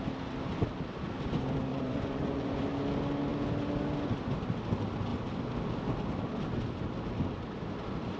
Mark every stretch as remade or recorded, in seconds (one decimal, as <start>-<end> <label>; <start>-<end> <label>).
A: 0.0-1.7 recorded; 1.7-2.6 remade; 2.6-8.2 recorded